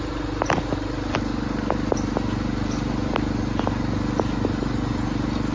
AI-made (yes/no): no